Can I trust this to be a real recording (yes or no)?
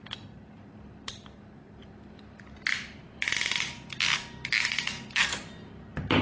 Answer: yes